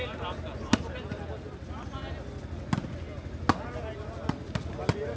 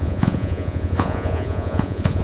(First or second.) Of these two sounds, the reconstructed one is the second